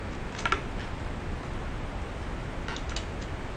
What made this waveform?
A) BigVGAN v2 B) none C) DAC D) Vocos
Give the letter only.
B